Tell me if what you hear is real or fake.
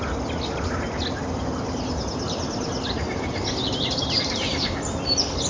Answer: real